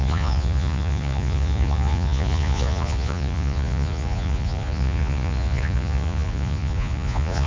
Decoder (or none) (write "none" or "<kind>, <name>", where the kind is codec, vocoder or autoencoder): vocoder, Vocos